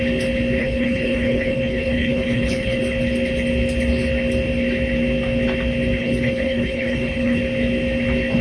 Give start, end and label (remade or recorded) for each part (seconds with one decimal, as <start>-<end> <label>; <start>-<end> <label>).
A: 0.0-0.6 recorded; 0.6-2.8 remade; 2.8-6.0 recorded; 6.0-7.4 remade; 7.4-8.4 recorded